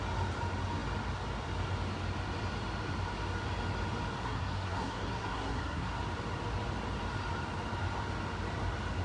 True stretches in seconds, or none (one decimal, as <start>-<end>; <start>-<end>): 0.0-4.2; 5.9-9.0